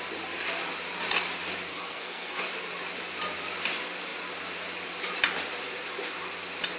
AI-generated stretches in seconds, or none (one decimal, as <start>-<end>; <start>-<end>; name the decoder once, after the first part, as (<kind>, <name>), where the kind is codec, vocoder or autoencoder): 1.7-2.5 (codec, SNAC)